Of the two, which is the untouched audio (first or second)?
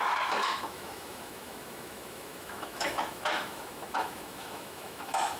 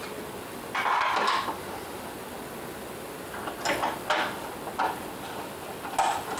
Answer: second